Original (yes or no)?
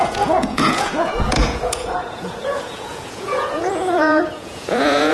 no